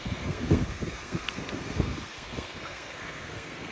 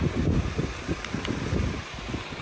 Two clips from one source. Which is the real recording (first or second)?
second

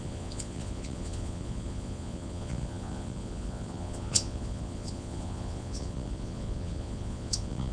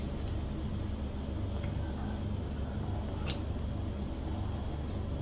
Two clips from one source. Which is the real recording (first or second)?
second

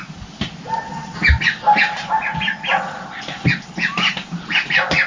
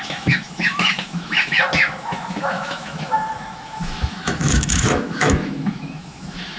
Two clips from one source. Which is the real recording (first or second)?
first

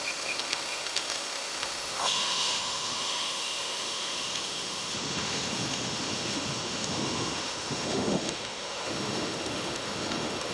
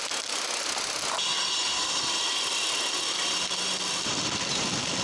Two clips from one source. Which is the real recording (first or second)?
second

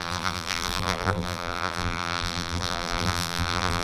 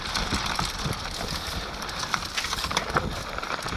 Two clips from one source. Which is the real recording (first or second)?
second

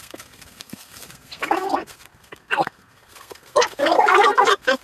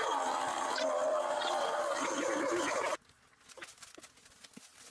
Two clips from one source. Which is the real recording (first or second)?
second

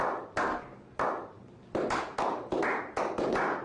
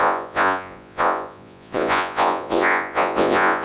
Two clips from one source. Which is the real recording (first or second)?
first